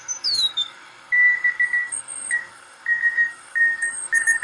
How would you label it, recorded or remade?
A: remade